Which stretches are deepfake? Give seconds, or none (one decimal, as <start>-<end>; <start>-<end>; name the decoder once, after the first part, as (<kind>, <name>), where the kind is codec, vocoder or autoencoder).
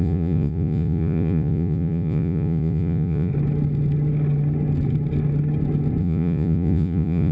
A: 0.0-3.3 (vocoder, Vocos); 6.0-7.3